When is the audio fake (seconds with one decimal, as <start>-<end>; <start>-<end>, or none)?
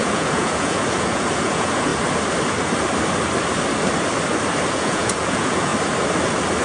0.0-1.9; 4.7-5.7